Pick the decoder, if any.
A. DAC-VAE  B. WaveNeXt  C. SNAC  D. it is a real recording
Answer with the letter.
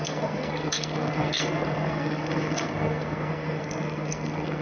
C